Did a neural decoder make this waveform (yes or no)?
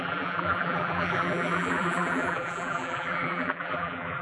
yes